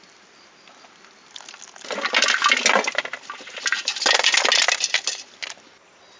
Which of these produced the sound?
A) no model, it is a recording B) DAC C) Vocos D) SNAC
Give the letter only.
A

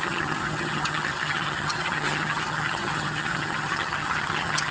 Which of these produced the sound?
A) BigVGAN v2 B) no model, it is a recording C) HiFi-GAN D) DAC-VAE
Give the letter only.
C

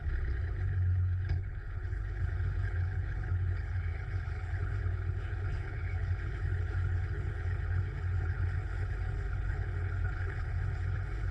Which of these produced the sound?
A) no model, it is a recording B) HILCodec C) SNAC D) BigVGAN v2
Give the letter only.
B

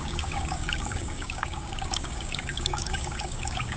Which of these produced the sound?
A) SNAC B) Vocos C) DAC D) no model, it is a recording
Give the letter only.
C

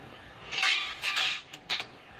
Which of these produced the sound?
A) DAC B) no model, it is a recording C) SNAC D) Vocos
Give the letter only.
A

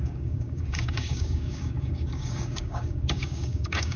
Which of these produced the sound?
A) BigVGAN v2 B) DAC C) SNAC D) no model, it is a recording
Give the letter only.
B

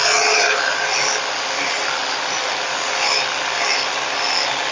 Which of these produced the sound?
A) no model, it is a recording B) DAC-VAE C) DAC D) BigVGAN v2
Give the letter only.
A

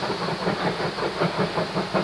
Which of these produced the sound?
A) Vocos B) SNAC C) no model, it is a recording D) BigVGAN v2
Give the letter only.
C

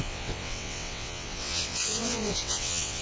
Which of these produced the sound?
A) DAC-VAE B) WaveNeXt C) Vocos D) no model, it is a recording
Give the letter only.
B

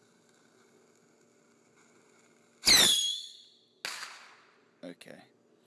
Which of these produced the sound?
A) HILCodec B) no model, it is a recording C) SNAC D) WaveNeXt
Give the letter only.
B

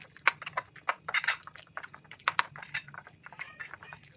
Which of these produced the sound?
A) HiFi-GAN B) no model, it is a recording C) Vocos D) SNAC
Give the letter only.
B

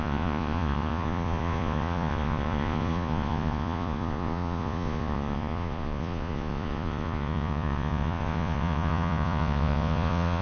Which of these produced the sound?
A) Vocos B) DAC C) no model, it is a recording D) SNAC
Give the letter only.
A